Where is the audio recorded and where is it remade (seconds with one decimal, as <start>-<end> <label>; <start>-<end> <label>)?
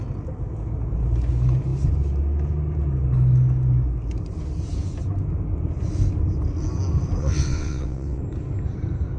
0.0-7.2 recorded; 7.2-8.2 remade; 8.2-9.2 recorded